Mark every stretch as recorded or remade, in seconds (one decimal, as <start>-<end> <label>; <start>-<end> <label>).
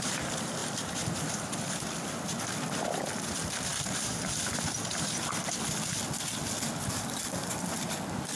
0.0-3.7 remade; 3.7-6.9 recorded; 6.9-8.4 remade